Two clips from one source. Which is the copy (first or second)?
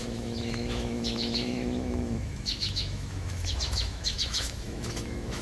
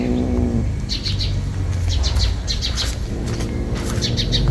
first